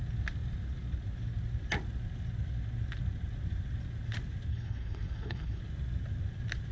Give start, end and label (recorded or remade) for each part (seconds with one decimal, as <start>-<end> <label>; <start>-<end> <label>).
0.0-4.5 recorded; 4.5-5.6 remade; 5.6-6.7 recorded